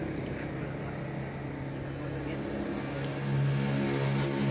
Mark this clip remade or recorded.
recorded